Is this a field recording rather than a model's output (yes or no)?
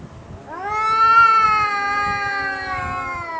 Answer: yes